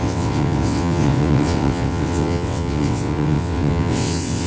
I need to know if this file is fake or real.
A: fake